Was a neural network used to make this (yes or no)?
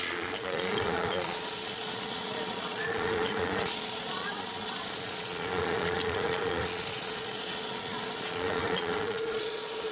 yes